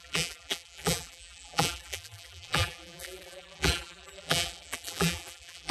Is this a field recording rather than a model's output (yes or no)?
no